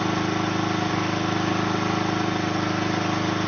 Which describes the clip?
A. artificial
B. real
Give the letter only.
B